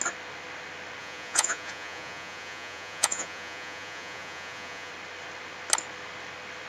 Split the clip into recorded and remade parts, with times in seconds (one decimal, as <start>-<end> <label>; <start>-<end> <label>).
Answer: 0.0-1.0 recorded; 1.0-4.9 remade; 4.9-6.7 recorded